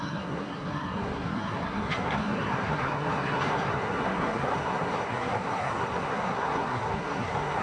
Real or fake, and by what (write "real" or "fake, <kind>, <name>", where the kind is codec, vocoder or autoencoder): fake, codec, SNAC